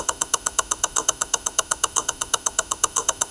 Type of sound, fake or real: fake